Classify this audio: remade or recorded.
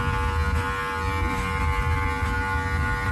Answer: recorded